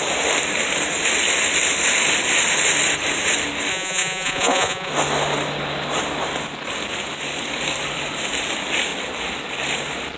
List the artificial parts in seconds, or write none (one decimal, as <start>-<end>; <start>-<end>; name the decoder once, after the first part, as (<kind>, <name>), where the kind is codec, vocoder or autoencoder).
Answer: 3.7-4.9 (vocoder, Vocos)